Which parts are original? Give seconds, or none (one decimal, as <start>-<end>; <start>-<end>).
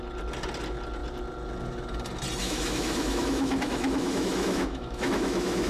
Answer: 0.0-2.4